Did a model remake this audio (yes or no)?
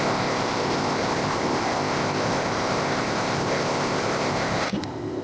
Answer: yes